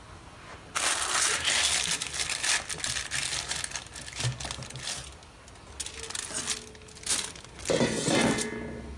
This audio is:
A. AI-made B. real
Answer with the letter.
B